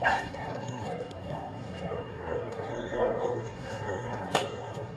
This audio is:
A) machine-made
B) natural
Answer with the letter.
A